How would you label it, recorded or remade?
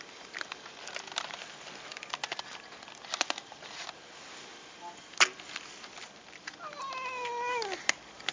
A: recorded